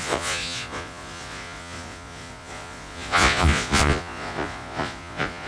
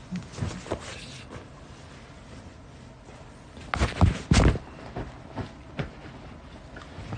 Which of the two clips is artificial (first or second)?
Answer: first